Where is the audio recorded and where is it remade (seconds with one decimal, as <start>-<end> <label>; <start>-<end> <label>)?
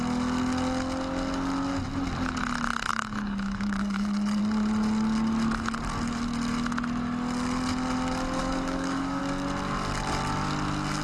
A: 0.0-2.9 recorded; 2.9-4.4 remade; 4.4-8.4 recorded; 8.4-9.2 remade; 9.2-11.0 recorded